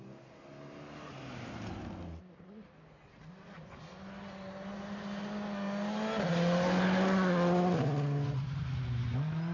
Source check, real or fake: real